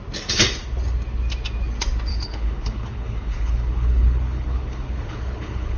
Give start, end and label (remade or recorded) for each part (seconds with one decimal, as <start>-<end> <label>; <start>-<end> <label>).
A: 0.0-2.1 recorded; 2.1-5.8 remade